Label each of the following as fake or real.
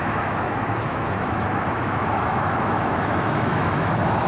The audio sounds fake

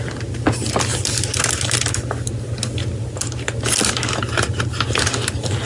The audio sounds real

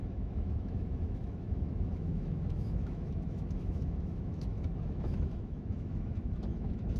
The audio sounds fake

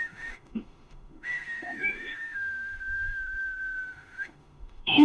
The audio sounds fake